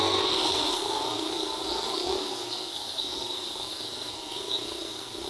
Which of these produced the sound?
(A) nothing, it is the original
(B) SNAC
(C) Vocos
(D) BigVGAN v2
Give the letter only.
B